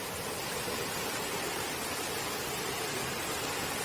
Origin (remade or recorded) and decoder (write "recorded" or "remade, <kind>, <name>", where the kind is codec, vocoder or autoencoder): recorded